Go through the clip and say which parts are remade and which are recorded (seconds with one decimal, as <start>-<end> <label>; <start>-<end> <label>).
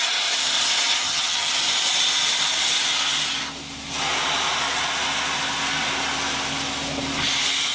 0.0-0.9 recorded; 0.9-1.5 remade; 1.5-7.7 recorded